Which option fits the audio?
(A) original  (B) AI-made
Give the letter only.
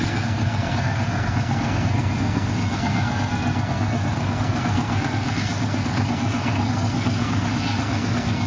B